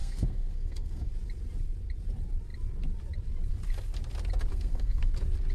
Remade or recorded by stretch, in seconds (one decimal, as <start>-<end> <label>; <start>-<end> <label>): 0.0-1.1 remade; 1.1-4.5 recorded; 4.5-5.1 remade; 5.1-5.5 recorded